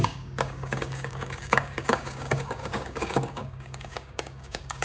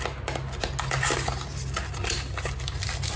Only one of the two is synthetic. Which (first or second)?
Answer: first